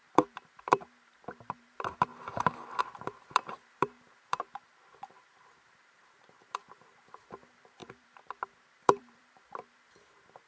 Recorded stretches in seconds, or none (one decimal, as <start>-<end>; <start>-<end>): 2.1-2.8